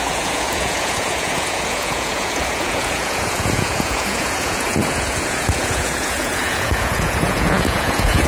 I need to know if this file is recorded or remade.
remade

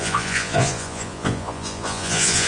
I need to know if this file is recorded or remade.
remade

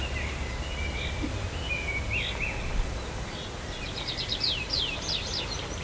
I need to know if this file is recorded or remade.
recorded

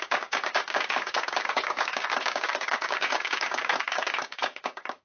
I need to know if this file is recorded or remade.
remade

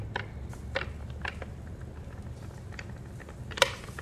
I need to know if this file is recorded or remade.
recorded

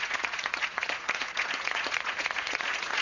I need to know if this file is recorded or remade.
remade